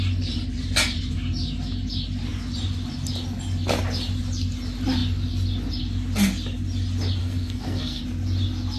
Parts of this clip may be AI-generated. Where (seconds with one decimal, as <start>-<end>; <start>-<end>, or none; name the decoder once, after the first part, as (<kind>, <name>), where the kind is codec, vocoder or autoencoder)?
7.2-8.0 (codec, SNAC)